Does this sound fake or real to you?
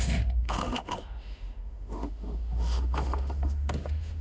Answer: fake